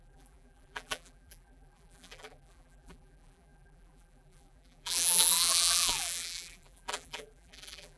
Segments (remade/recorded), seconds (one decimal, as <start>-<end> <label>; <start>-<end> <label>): 0.0-8.0 remade